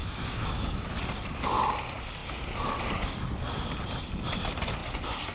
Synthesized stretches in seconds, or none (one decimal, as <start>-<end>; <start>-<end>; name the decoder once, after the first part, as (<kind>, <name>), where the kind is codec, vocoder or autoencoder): 0.0-1.0 (autoencoder, DAC-VAE)